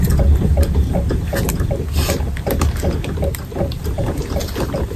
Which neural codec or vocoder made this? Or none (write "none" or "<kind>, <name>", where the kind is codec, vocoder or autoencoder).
none